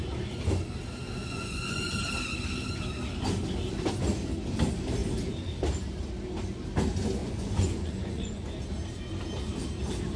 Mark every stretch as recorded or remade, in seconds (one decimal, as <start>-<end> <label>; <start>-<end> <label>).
0.0-1.2 recorded; 1.2-1.9 remade; 1.9-7.2 recorded; 7.2-8.6 remade; 8.6-10.2 recorded